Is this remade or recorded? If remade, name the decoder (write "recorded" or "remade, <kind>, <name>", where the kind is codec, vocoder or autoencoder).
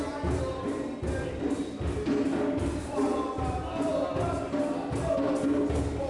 recorded